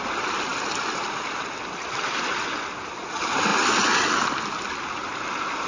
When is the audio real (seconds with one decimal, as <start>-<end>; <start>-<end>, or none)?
0.0-5.7